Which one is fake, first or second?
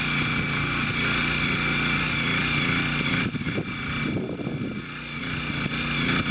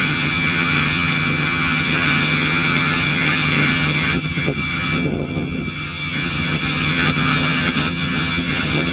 second